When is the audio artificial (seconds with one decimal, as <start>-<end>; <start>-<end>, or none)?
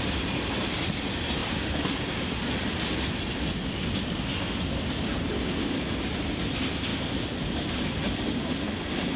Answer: none